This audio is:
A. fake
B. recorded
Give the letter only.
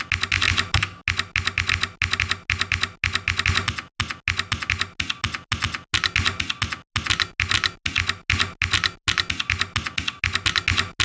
B